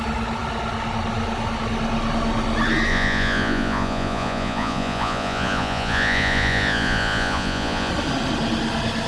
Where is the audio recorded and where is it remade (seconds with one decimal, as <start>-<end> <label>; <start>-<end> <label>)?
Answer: 0.0-2.9 recorded; 2.9-7.9 remade; 7.9-9.1 recorded